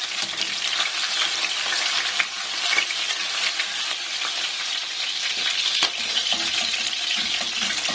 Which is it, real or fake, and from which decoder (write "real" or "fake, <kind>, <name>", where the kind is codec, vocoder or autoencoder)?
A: real